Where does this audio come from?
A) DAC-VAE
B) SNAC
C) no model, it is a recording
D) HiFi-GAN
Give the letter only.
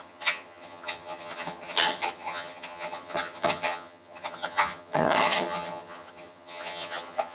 D